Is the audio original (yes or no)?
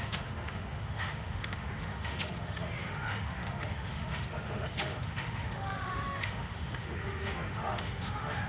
no